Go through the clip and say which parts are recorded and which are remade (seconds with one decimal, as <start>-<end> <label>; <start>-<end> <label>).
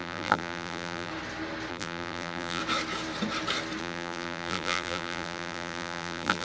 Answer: 0.0-1.1 remade; 1.1-1.7 recorded; 1.7-2.6 remade; 2.6-3.8 recorded; 3.8-6.4 remade